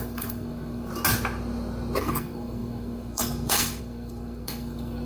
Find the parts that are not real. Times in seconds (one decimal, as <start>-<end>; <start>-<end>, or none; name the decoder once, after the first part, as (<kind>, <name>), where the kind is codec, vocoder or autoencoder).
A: 0.0-0.9 (codec, SNAC); 2.0-5.0